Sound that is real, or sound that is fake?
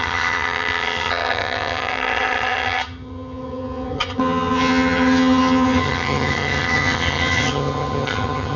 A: fake